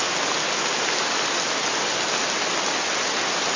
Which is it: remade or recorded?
recorded